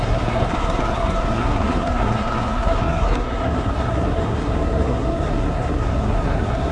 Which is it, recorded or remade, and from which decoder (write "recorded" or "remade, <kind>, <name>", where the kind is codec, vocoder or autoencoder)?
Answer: remade, codec, SNAC